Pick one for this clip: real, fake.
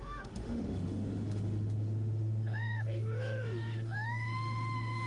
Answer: fake